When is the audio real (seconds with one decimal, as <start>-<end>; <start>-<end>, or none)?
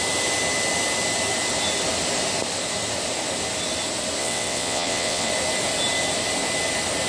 0.0-4.2; 5.3-7.1